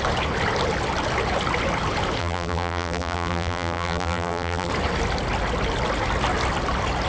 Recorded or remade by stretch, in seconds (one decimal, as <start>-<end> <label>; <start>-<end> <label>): 0.0-2.2 recorded; 2.2-4.7 remade; 4.7-7.1 recorded